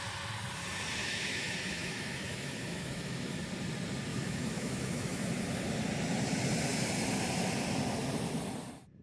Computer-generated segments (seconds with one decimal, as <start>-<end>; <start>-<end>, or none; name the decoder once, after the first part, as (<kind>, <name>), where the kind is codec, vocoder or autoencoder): 1.0-3.5 (autoencoder, DAC-VAE); 4.1-5.3